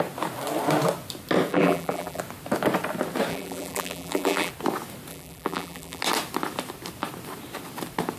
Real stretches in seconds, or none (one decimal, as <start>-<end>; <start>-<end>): 0.0-1.5; 2.2-3.3; 4.5-5.1; 6.0-8.2